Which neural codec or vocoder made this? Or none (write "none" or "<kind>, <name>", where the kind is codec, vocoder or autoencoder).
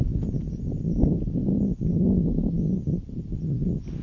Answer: none